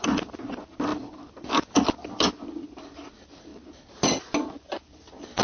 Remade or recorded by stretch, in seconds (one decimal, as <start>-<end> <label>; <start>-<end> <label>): 0.0-5.4 recorded

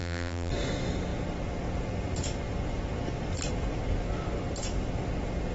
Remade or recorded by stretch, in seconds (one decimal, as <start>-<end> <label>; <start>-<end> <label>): 0.0-0.5 remade; 0.5-5.5 recorded